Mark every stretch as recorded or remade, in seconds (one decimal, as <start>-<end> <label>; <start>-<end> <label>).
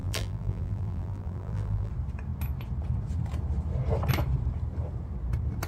0.0-1.9 remade; 1.9-5.7 recorded